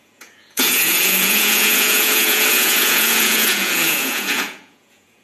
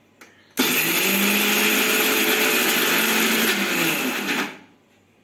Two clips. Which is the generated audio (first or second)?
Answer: first